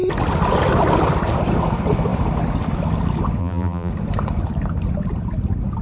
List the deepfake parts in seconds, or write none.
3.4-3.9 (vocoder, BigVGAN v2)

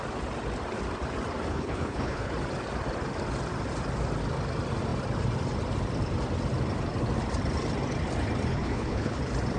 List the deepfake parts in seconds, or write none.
1.5-2.3 (codec, HILCodec); 8.5-9.2

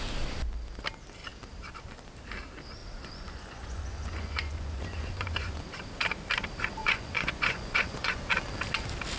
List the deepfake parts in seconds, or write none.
2.8-5.6 (vocoder, Vocos); 6.8-8.2

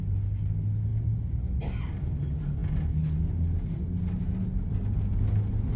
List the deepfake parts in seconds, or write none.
none

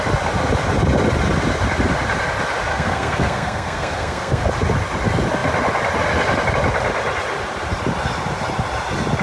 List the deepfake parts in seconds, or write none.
2.7-4.4 (codec, SNAC)

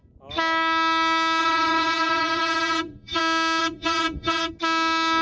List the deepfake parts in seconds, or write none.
1.4-3.2 (vocoder, Vocos); 3.6-4.5